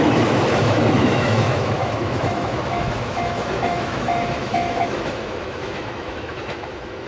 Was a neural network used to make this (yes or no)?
yes